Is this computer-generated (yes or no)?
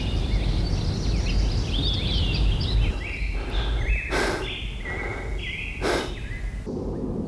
no